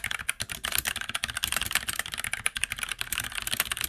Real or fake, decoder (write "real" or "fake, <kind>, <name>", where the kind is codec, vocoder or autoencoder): real